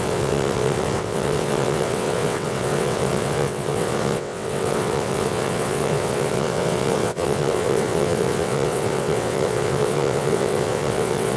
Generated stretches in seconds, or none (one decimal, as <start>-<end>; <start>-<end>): 0.0-11.4